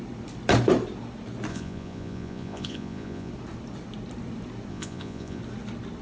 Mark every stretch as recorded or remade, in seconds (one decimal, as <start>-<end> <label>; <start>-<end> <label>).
0.0-1.5 recorded; 1.5-3.3 remade; 3.3-4.7 recorded; 4.7-5.4 remade; 5.4-6.0 recorded

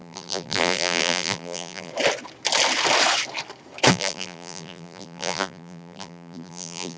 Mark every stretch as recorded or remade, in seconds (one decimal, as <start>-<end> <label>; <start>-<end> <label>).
0.0-1.9 remade; 1.9-3.9 recorded; 3.9-7.0 remade

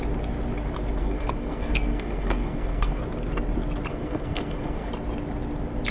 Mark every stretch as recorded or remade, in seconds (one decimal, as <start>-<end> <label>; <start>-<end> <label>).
0.0-1.0 recorded; 1.0-3.0 remade; 3.0-3.9 recorded; 3.9-4.9 remade; 4.9-5.9 recorded